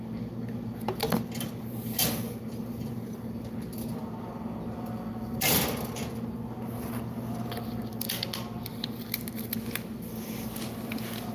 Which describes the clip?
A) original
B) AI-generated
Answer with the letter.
A